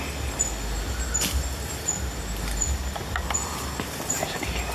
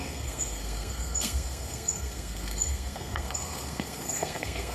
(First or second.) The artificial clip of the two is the second